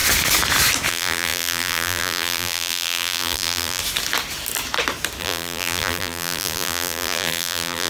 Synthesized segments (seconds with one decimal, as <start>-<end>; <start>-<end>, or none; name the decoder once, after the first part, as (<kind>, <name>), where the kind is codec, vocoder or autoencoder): 0.9-3.8 (vocoder, BigVGAN v2); 5.2-7.9